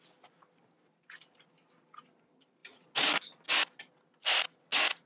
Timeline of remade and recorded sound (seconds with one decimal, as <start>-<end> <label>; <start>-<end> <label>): 0.0-5.1 recorded

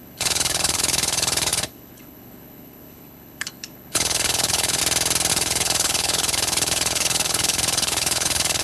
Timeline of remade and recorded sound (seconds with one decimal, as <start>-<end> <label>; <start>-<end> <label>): 0.0-4.8 remade; 4.8-5.3 recorded; 5.3-8.6 remade

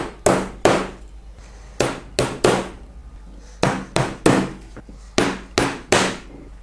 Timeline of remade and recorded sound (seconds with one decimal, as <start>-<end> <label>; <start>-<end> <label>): 0.0-6.6 recorded

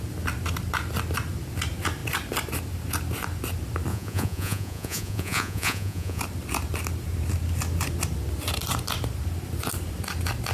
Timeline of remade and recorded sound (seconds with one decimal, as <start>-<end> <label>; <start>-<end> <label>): 0.0-3.9 recorded; 3.9-6.2 remade; 6.2-10.5 recorded